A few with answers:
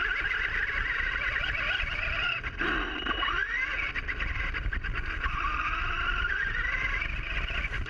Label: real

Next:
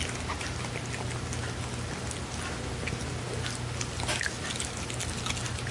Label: real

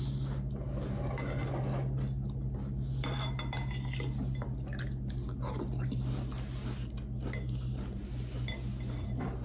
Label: real